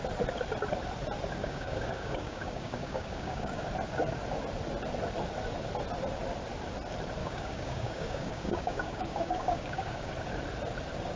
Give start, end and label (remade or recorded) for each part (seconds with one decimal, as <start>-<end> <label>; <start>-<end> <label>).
0.0-1.4 recorded; 1.4-3.6 remade; 3.6-7.2 recorded; 7.2-10.1 remade; 10.1-11.2 recorded